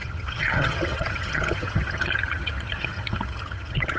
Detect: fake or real fake